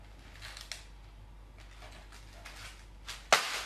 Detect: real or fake real